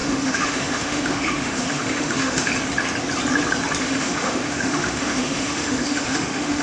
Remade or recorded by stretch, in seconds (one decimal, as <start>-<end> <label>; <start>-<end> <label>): 0.0-2.5 remade; 2.5-3.8 recorded; 3.8-6.6 remade